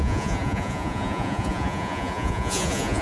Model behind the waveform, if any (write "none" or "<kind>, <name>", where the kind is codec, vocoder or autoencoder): vocoder, Vocos